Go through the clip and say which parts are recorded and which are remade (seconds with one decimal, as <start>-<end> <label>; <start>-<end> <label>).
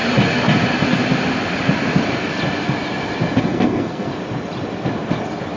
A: 0.0-3.4 recorded; 3.4-4.1 remade; 4.1-5.6 recorded